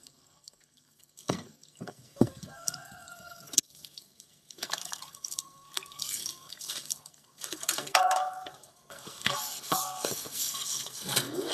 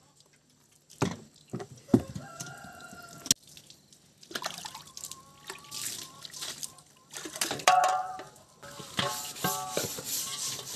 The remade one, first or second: first